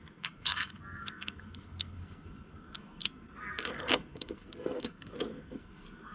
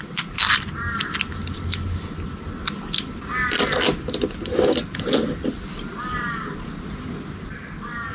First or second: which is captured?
second